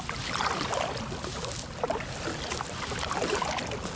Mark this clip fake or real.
real